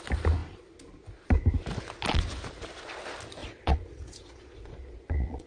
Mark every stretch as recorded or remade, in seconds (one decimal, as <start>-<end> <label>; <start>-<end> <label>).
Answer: 0.0-3.4 recorded; 3.4-5.5 remade